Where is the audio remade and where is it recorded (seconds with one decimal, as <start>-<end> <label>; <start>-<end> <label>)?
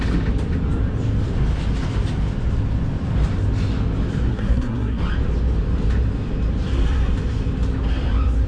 0.0-4.3 recorded; 4.3-5.0 remade; 5.0-8.5 recorded